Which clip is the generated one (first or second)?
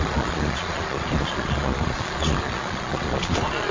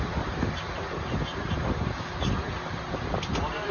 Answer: first